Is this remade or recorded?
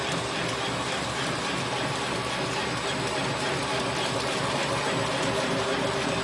recorded